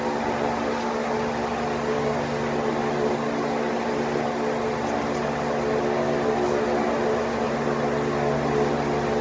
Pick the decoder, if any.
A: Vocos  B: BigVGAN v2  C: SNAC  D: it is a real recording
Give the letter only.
D